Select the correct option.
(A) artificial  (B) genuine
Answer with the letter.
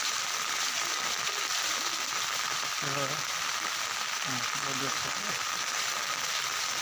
B